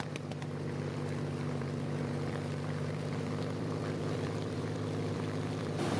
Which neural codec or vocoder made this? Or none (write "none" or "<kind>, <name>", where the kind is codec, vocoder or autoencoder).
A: vocoder, BigVGAN v2